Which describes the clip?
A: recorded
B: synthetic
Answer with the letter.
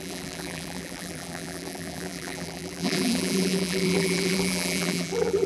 B